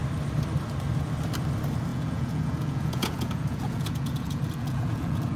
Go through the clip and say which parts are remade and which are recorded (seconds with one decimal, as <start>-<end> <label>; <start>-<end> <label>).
0.0-1.9 recorded; 1.9-5.4 remade